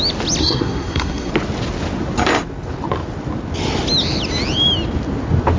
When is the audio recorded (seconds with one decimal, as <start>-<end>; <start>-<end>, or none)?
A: 0.0-0.4; 1.3-5.6